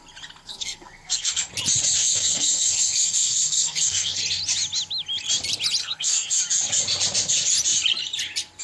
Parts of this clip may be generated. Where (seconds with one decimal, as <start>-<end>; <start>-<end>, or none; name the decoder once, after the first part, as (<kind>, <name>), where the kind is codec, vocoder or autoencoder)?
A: 0.4-1.5 (codec, SNAC); 2.0-4.2; 5.8-6.4